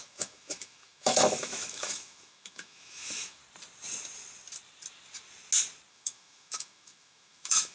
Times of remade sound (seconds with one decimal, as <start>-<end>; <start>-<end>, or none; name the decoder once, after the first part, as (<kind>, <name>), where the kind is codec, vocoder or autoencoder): 0.0-3.4 (autoencoder, DAC-VAE); 5.9-7.7